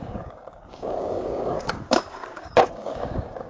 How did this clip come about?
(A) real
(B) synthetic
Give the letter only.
B